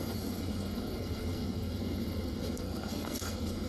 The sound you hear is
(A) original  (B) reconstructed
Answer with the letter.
B